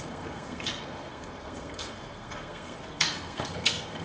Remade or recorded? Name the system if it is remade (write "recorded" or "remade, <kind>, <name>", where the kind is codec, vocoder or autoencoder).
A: remade, codec, SNAC